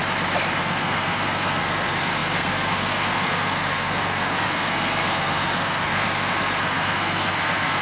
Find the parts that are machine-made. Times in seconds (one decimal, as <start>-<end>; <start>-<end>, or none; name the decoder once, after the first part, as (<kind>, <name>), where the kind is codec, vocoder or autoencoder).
0.6-7.8 (codec, SNAC)